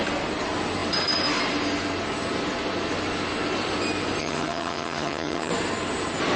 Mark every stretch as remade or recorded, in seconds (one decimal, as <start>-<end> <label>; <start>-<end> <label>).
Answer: 0.0-4.2 recorded; 4.2-5.5 remade; 5.5-6.4 recorded